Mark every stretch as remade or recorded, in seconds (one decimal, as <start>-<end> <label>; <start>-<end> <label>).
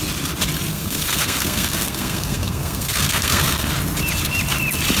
0.0-0.7 recorded; 0.7-3.7 remade; 3.7-5.0 recorded